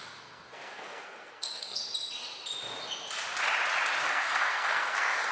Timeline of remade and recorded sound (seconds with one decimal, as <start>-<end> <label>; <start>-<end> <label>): 0.0-1.8 remade; 1.8-4.0 recorded; 4.0-5.3 remade